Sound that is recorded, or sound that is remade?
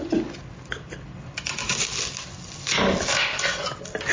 recorded